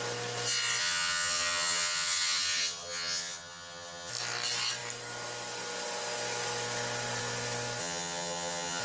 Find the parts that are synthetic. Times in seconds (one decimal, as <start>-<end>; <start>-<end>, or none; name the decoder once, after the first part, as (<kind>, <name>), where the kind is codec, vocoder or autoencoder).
0.8-4.1 (vocoder, HiFi-GAN); 7.8-8.8